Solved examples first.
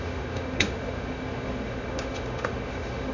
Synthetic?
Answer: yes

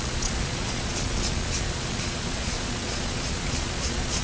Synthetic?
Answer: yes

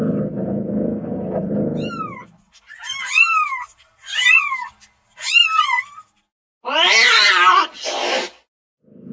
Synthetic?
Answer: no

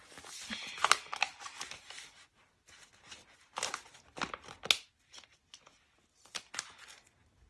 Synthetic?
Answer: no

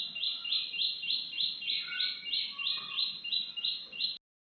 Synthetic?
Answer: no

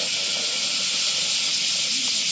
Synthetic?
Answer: no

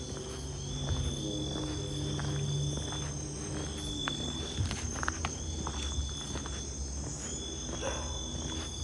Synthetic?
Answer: no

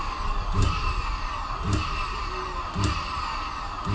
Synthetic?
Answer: no